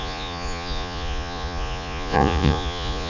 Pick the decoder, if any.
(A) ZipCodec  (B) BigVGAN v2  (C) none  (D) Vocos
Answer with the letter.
D